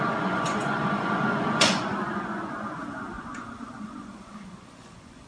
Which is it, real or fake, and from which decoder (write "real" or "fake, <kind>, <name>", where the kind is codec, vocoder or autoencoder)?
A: fake, vocoder, Vocos